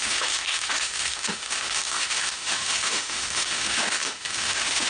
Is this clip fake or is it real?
fake